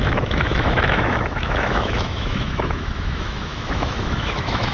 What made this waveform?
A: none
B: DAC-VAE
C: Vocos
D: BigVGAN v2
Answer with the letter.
B